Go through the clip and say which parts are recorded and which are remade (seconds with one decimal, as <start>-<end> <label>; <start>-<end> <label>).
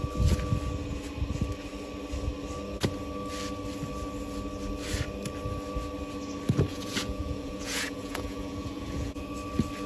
0.0-6.7 recorded; 6.7-9.3 remade; 9.3-9.9 recorded